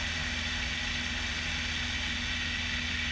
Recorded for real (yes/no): yes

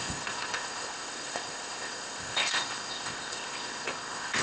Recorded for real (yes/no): no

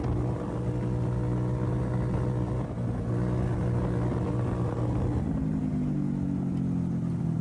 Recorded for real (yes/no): yes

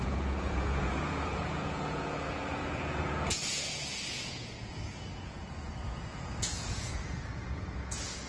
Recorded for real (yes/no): no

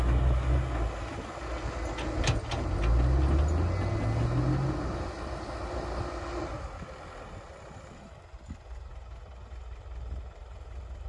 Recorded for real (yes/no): yes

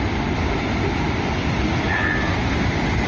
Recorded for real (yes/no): yes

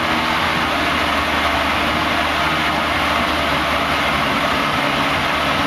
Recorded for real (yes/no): yes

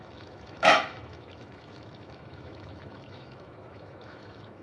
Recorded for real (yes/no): no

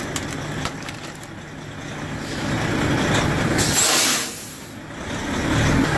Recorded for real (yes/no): yes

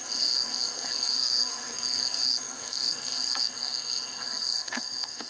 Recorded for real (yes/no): no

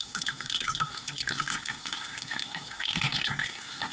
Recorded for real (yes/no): no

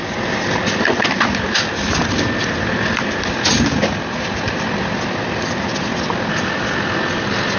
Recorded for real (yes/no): yes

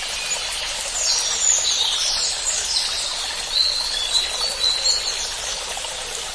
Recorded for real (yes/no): yes